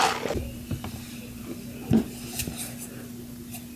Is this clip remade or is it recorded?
recorded